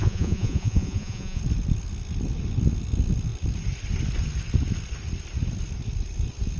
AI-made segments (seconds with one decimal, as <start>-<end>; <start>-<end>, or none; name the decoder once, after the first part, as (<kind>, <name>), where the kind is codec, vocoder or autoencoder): 0.0-1.4 (vocoder, Vocos)